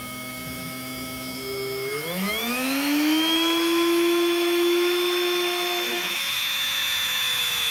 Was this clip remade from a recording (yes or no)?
yes